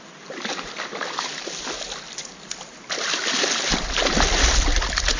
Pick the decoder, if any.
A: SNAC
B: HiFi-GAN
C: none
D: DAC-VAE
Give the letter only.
C